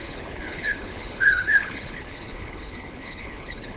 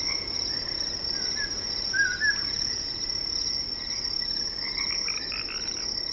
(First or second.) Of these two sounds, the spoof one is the first